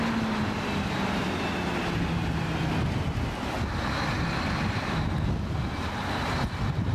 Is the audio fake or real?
real